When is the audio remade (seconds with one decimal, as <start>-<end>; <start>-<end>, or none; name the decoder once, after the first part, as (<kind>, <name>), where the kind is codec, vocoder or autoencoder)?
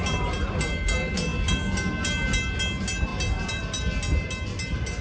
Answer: none